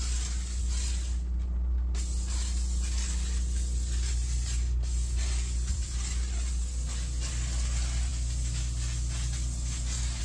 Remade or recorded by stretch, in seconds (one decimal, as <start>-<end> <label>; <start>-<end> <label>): 0.0-10.2 recorded